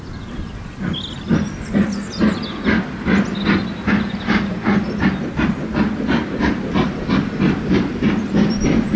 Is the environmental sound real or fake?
real